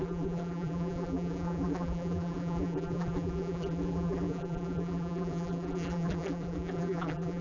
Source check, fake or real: fake